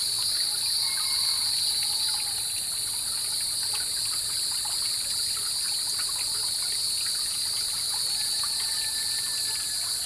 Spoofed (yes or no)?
no